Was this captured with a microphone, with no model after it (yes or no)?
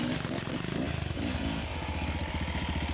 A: yes